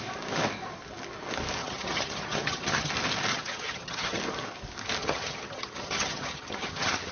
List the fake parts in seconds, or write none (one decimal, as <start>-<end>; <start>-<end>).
1.6-2.9; 3.3-4.2; 5.0-7.1